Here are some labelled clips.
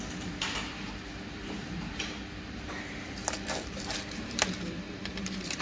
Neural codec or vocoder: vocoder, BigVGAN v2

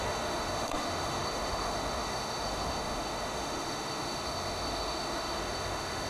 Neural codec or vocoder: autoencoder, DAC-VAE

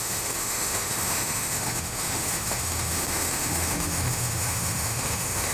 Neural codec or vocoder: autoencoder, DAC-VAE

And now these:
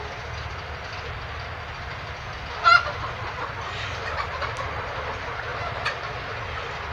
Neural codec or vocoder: none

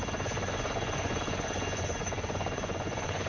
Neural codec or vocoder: vocoder, Vocos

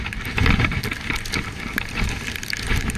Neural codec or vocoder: none